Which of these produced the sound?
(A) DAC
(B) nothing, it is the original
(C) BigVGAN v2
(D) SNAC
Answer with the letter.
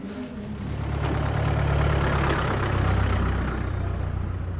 B